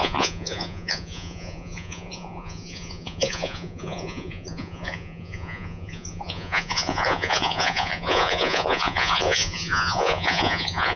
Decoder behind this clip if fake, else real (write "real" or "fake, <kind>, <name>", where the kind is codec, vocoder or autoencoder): fake, vocoder, Vocos